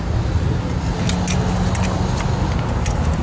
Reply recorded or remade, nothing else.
recorded